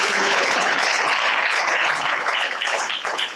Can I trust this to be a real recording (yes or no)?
no